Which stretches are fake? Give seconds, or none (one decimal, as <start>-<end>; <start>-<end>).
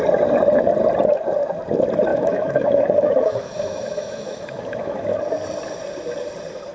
2.1-5.2